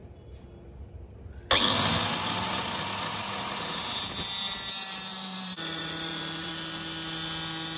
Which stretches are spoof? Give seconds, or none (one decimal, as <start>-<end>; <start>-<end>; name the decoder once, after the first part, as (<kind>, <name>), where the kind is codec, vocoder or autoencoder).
5.1-6.5 (vocoder, BigVGAN v2)